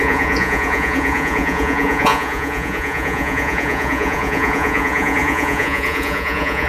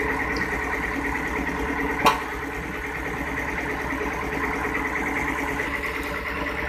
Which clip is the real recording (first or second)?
second